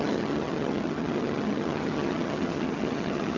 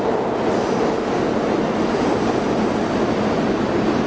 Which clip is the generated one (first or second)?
first